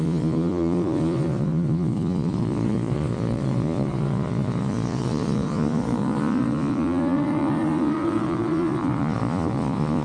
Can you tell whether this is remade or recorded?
remade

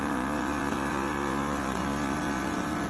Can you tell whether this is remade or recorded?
remade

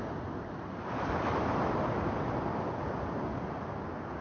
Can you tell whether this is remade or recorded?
recorded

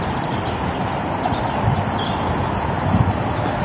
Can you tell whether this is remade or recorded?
recorded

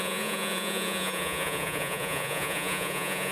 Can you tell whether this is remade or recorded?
remade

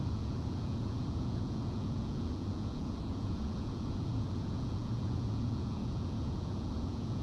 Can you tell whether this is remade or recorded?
remade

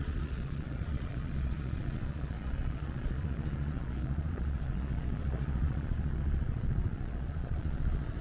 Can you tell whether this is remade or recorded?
remade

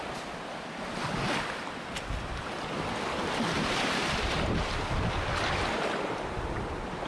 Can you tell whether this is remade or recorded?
recorded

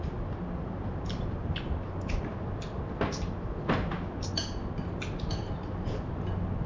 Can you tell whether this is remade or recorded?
recorded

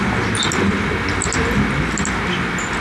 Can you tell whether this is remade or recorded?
recorded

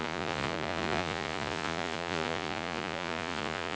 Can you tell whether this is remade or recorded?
remade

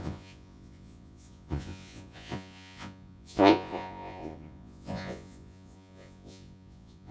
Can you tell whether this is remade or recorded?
remade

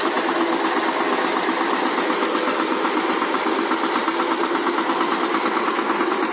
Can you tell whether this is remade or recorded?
recorded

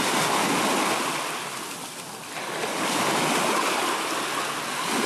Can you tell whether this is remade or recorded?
recorded